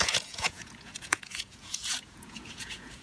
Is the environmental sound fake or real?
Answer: fake